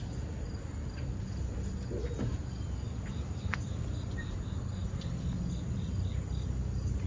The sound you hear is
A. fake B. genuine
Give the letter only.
B